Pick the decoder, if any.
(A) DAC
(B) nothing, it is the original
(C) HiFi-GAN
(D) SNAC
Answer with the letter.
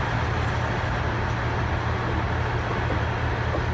B